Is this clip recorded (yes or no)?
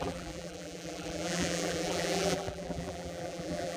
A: no